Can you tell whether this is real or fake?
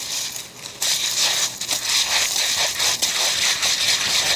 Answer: real